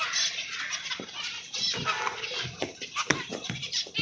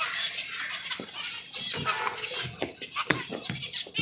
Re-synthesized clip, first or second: first